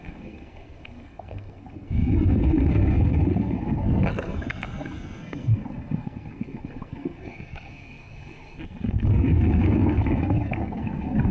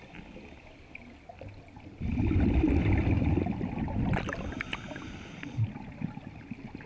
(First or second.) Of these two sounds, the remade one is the first